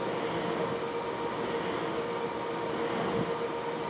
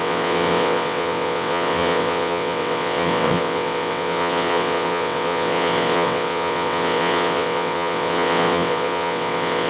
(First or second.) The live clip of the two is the first